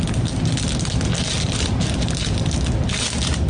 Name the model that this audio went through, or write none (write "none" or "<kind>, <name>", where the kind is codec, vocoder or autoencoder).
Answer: none